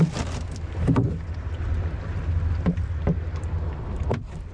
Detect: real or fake real